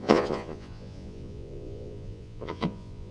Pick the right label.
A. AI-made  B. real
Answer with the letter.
A